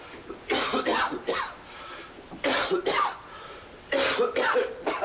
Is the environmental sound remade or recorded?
recorded